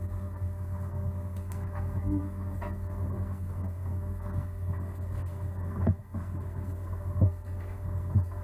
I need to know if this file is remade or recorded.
remade